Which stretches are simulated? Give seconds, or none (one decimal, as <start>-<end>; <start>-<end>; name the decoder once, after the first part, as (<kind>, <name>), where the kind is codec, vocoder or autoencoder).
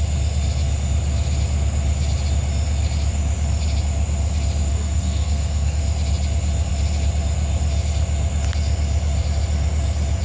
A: 4.7-5.8 (codec, SNAC)